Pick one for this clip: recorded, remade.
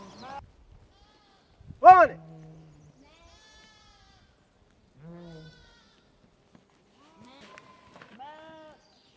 recorded